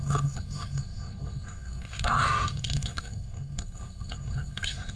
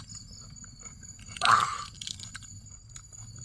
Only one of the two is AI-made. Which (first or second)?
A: first